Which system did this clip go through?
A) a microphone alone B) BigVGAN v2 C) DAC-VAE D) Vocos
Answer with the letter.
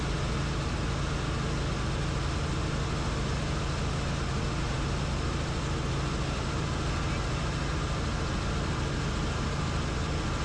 A